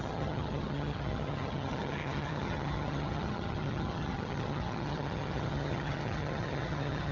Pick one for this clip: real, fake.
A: fake